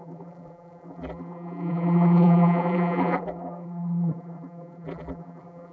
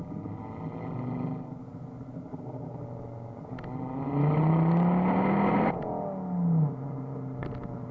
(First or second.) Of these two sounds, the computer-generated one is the first